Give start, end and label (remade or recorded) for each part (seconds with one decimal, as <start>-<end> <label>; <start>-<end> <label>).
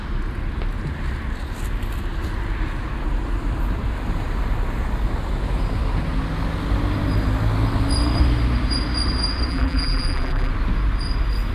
0.0-9.5 recorded; 9.5-10.5 remade; 10.5-11.5 recorded